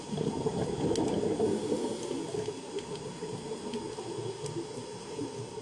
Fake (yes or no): no